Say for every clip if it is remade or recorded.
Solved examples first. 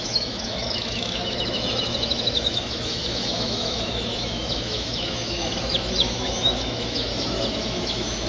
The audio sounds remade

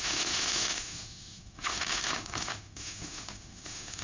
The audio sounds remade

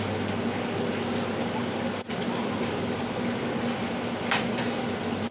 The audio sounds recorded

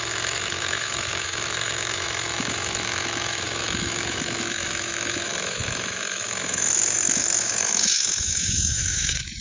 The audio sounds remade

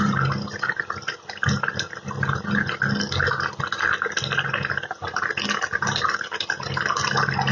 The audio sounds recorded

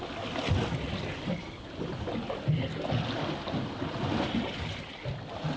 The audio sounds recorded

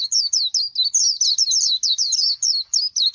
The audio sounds recorded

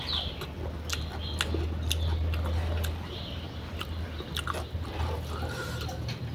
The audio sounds recorded